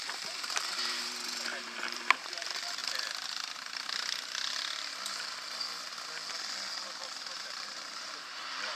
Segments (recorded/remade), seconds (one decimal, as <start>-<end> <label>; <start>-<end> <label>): 0.0-2.8 remade; 2.8-7.0 recorded; 7.0-8.8 remade